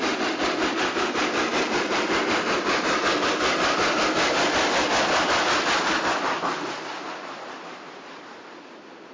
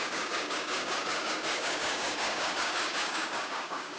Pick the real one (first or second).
first